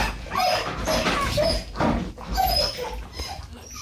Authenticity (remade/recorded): recorded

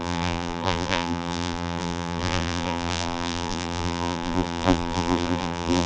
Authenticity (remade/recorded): remade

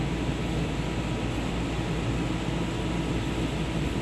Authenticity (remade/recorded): recorded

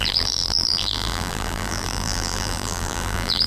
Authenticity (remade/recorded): remade